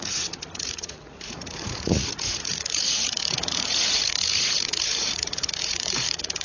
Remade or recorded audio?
remade